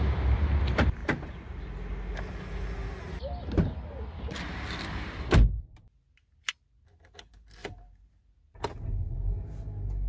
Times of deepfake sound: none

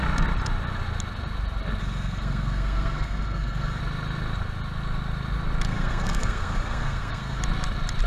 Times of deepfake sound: 1.8-3.8 (codec, SNAC); 5.7-7.4

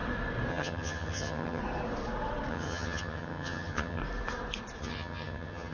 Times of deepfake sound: 0.5-1.6 (vocoder, HiFi-GAN); 2.5-4.0; 4.8-5.7